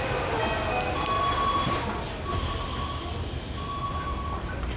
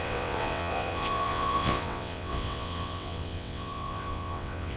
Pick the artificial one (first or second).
second